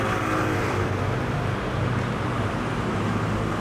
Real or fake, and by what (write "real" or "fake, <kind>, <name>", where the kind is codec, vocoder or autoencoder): real